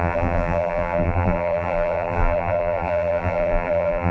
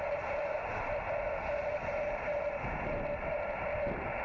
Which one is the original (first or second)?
second